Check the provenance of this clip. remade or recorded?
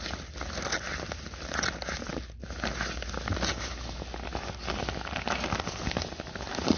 recorded